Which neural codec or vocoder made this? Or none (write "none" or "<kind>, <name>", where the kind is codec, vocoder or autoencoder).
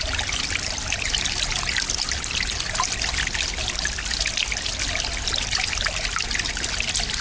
none